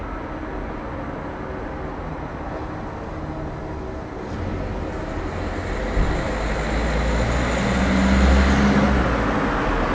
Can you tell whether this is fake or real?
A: real